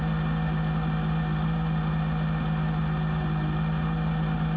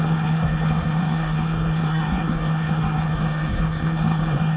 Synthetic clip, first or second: second